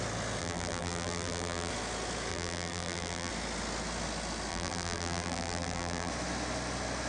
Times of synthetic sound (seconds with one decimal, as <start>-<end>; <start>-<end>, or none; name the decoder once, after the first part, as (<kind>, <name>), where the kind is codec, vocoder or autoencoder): 0.4-1.7 (vocoder, BigVGAN v2); 2.3-3.3; 4.5-6.1